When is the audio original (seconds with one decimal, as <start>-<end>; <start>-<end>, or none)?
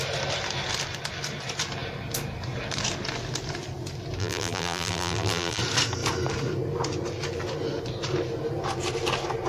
0.0-4.2; 5.6-9.5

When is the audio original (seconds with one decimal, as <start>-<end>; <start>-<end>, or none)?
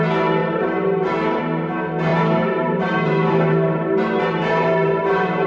0.0-0.4; 1.4-2.1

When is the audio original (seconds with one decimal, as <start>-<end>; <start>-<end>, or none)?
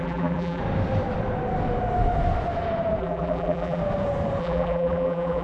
0.6-3.0; 3.8-4.4